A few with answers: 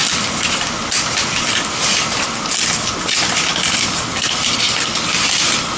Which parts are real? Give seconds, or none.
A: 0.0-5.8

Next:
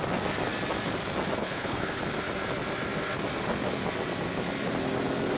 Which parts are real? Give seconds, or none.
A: 0.0-1.4; 2.0-5.4